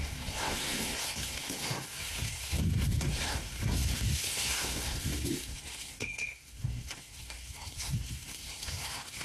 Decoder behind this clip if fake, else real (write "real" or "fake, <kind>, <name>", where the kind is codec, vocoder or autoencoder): fake, codec, SNAC